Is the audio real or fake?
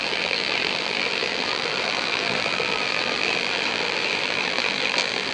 fake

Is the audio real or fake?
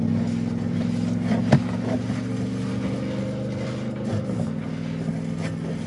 real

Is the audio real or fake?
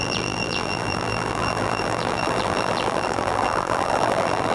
fake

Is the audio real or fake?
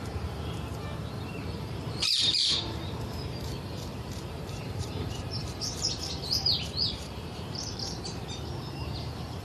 fake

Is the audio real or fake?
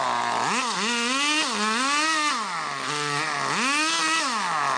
real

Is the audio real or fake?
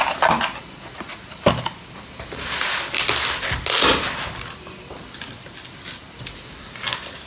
real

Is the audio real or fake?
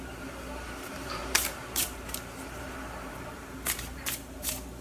fake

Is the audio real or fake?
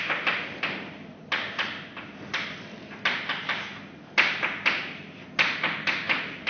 real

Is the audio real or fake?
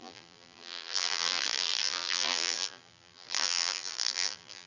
fake